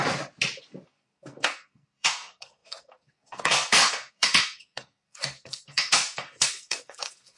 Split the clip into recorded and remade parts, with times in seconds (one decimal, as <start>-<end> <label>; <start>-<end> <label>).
0.0-0.9 recorded; 0.9-7.4 remade

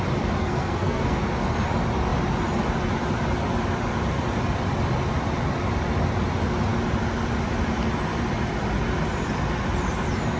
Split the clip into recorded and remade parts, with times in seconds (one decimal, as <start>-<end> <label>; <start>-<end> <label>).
0.0-0.4 recorded; 0.4-1.2 remade; 1.2-10.4 recorded

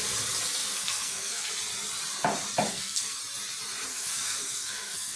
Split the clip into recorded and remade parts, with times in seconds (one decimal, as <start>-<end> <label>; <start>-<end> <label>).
0.0-0.6 recorded; 0.6-1.5 remade; 1.5-2.7 recorded; 2.7-3.2 remade; 3.2-3.9 recorded; 3.9-5.2 remade

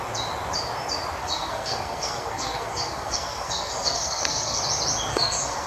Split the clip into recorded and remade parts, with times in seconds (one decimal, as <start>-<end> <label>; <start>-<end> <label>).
0.0-1.2 recorded; 1.2-4.6 remade; 4.6-5.1 recorded; 5.1-5.7 remade

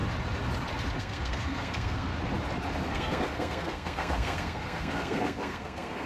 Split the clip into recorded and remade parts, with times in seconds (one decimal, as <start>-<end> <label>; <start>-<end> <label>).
0.0-1.0 recorded; 1.0-2.1 remade; 2.1-2.9 recorded; 2.9-6.1 remade

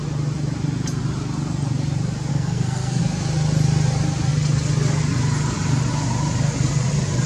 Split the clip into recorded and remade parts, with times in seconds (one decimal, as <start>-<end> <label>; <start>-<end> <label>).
0.0-2.3 recorded; 2.3-3.0 remade; 3.0-7.3 recorded

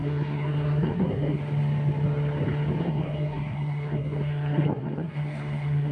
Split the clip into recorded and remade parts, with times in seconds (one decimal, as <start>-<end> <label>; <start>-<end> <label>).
0.0-1.4 remade; 1.4-2.8 recorded; 2.8-5.9 remade